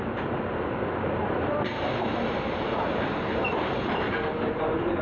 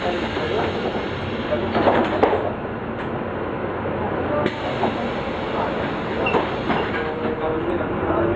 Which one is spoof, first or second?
first